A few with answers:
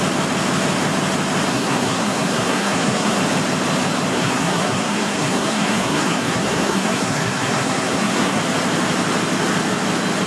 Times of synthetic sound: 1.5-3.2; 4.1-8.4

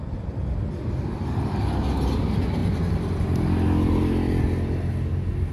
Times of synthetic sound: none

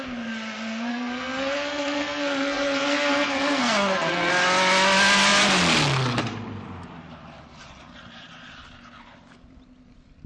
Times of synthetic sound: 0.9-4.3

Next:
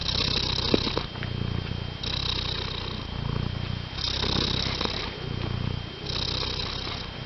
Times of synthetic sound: none

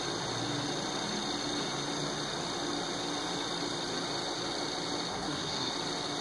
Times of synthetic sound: 5.1-5.7

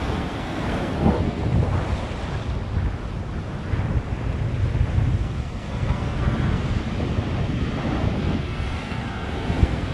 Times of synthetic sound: 0.0-1.4; 5.2-6.8; 8.2-9.9

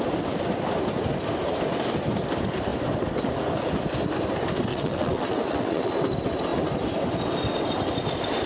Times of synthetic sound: 4.7-5.9